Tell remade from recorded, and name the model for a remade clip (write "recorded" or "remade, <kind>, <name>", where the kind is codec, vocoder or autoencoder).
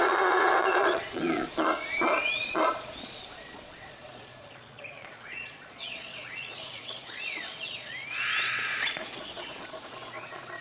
remade, vocoder, Vocos